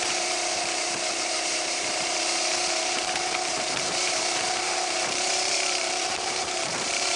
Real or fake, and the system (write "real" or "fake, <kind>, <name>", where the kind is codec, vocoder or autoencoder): fake, vocoder, BigVGAN v2